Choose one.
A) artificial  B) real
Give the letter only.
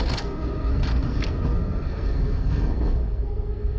A